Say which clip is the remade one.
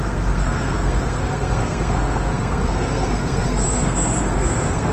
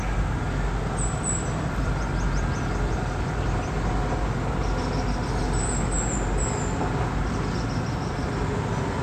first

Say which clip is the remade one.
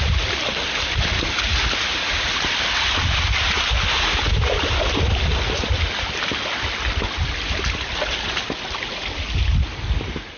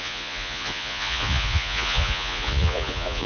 second